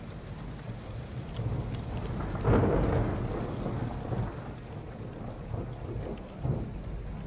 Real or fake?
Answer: real